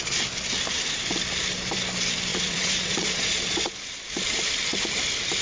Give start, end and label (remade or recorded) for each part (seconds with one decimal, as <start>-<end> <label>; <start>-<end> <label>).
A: 0.0-2.3 recorded; 2.3-3.7 remade; 3.7-5.4 recorded